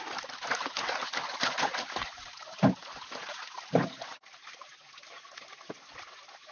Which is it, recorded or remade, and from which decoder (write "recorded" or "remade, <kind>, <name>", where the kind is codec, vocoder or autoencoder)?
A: recorded